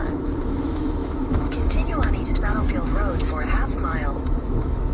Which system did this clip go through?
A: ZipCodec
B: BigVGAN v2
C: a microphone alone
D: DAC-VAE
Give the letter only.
D